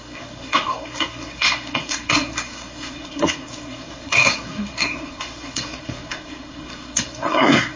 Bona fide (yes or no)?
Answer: no